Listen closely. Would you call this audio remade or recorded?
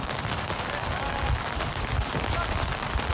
remade